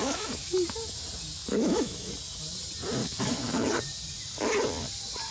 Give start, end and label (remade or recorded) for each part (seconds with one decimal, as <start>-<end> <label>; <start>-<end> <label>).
0.0-0.6 remade; 0.6-1.4 recorded; 1.4-2.1 remade; 2.1-3.0 recorded; 3.0-3.7 remade; 3.7-5.3 recorded